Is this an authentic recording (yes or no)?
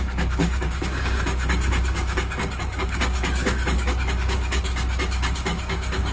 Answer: no